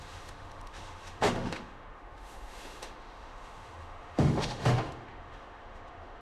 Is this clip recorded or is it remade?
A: remade